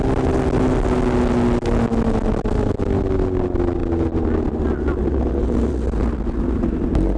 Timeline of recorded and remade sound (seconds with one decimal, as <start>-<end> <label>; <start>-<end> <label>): 0.0-7.2 recorded